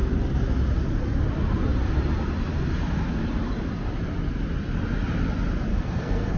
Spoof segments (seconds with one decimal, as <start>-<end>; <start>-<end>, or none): 5.7-6.4